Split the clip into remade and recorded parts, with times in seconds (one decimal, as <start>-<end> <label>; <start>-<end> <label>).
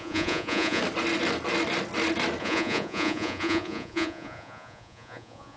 0.0-0.8 remade; 0.8-2.4 recorded; 2.4-5.6 remade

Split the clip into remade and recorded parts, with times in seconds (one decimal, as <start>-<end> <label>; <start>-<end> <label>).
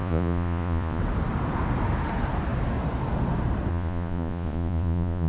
0.0-1.0 remade; 1.0-3.7 recorded; 3.7-5.3 remade